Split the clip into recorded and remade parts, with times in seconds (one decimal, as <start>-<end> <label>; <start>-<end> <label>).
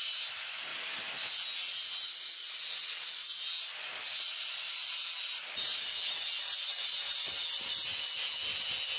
0.0-9.0 recorded